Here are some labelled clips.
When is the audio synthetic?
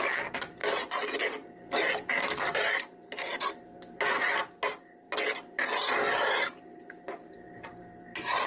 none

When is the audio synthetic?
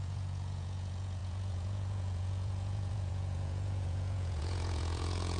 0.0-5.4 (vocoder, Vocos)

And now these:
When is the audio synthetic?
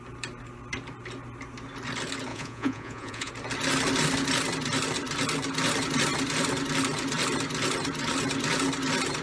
2.3-3.3 (vocoder, Vocos)